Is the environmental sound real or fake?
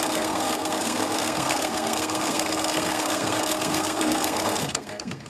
fake